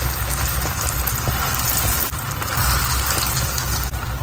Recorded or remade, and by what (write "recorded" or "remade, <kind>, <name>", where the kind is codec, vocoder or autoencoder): recorded